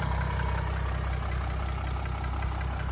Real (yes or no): yes